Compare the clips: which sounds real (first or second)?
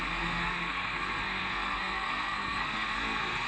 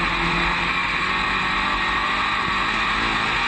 second